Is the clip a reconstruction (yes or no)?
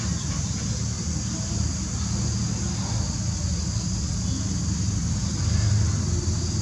yes